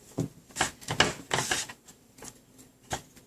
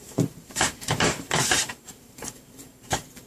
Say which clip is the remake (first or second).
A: second